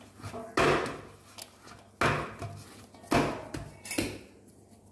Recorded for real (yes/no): yes